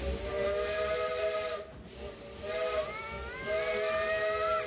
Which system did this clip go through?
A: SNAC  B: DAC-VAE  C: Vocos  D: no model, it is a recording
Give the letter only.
D